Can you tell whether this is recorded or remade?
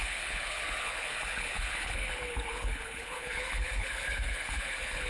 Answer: remade